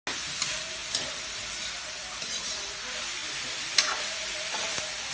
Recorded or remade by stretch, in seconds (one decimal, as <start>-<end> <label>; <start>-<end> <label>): 0.0-0.8 recorded; 0.8-2.2 remade; 2.2-3.2 recorded; 3.2-5.1 remade